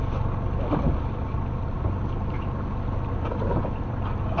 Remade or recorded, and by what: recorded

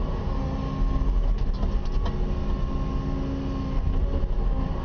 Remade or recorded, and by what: recorded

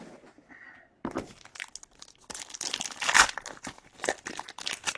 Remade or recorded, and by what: recorded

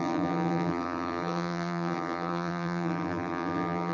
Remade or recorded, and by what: remade, vocoder, BigVGAN v2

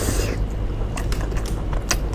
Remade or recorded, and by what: recorded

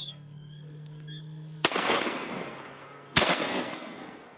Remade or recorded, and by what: remade, codec, SNAC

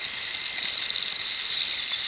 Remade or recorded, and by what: recorded